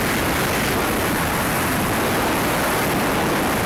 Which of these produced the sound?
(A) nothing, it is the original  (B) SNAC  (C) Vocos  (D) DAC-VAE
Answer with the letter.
A